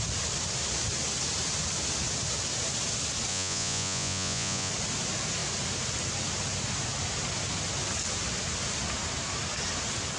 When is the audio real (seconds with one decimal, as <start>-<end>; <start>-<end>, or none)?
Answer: 0.0-3.3; 4.7-10.2